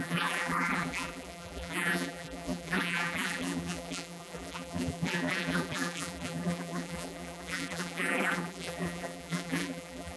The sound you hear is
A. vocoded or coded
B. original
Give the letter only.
A